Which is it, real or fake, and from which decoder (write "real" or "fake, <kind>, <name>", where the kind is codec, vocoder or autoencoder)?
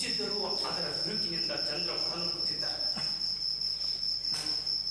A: real